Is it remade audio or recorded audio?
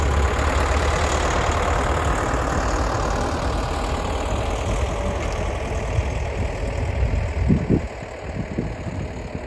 recorded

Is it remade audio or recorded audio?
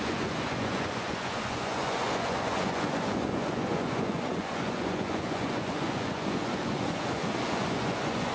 remade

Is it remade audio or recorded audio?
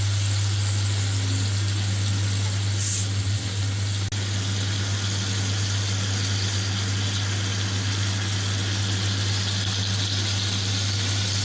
recorded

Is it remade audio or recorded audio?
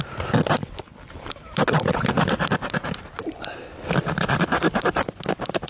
recorded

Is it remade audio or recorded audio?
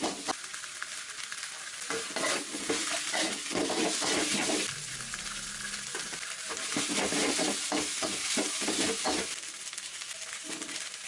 recorded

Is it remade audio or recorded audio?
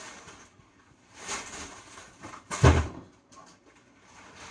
recorded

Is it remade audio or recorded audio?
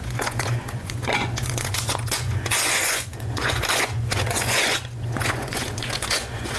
remade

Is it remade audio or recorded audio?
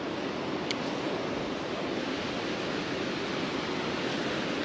recorded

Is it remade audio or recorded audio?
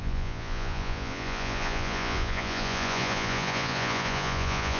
remade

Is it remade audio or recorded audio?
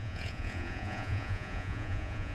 remade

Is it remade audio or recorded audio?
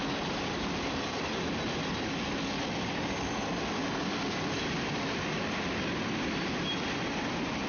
recorded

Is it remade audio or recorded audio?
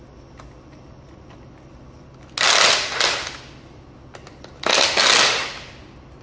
recorded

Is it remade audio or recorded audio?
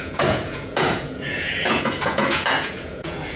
remade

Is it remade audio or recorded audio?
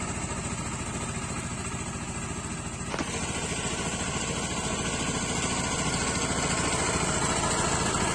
recorded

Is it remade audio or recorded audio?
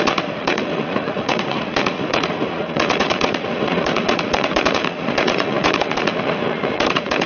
remade